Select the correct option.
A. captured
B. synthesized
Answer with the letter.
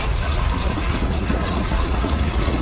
B